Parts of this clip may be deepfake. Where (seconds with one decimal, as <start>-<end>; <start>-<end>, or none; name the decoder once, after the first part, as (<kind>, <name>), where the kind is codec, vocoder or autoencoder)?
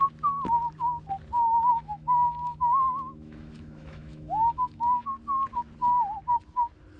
1.7-5.1 (autoencoder, DAC-VAE)